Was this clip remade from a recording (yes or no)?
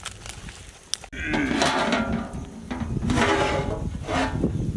no